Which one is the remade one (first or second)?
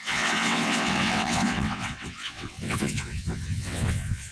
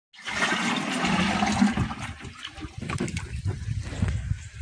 first